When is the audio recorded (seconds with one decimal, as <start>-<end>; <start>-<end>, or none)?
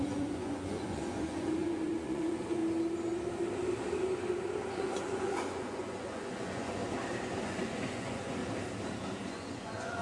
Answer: 2.6-4.7; 6.8-7.4; 8.4-9.2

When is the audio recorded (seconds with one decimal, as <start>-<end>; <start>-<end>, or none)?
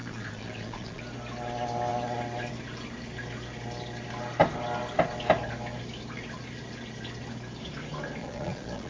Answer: 1.0-8.2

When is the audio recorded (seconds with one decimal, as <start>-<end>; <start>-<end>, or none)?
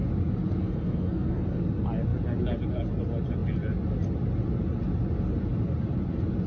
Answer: 0.0-0.6; 1.6-6.5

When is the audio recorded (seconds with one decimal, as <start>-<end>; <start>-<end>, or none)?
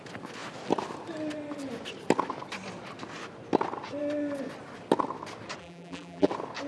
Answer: 0.0-5.6; 6.3-6.7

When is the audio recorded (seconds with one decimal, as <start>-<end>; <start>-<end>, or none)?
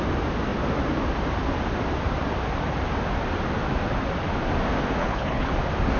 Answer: 0.0-5.0; 5.5-6.0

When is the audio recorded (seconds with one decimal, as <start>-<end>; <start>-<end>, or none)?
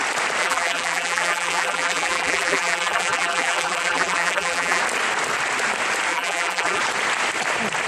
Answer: 0.0-0.4; 4.8-6.1; 6.8-7.9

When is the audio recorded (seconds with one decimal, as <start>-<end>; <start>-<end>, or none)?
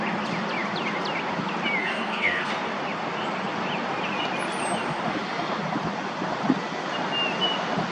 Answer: 0.0-1.8; 2.5-7.9